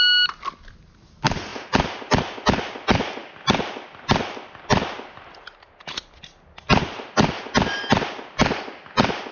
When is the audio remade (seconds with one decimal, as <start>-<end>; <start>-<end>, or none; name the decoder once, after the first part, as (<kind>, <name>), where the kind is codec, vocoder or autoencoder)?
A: none